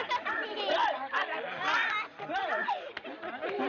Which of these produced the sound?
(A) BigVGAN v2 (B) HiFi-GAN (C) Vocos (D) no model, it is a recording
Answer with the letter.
D